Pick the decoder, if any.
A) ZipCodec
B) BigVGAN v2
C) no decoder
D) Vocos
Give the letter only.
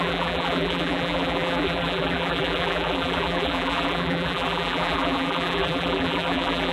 B